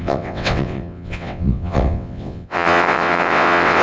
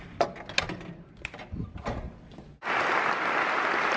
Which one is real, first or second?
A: second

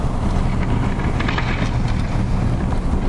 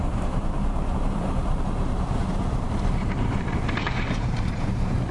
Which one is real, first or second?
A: first